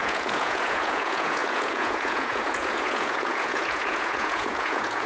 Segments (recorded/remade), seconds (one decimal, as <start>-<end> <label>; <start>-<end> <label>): 0.0-5.1 remade